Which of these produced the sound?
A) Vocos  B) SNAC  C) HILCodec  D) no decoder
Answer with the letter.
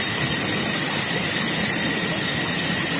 D